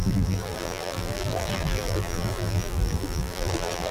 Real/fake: fake